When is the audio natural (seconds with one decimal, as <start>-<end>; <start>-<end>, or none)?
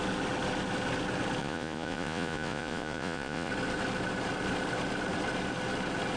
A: 0.0-1.4; 3.5-6.2